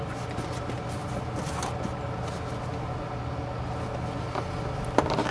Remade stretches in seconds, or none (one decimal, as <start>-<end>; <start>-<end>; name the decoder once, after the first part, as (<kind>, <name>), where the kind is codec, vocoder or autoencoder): none